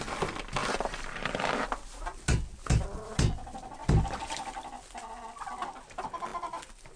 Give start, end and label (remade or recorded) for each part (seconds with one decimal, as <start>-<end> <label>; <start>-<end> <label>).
0.0-0.6 recorded; 0.6-1.5 remade; 1.5-7.0 recorded